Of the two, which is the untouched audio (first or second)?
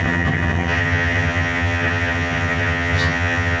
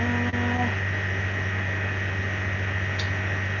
second